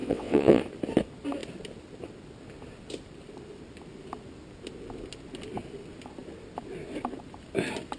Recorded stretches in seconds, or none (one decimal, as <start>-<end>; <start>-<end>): 0.6-8.0